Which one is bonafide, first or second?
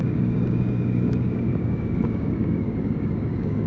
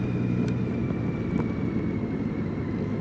second